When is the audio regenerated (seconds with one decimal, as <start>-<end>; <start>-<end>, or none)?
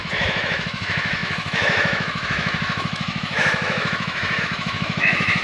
0.0-5.4